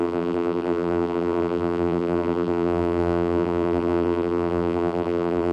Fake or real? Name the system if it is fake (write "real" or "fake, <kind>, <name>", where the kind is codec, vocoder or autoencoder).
fake, vocoder, BigVGAN v2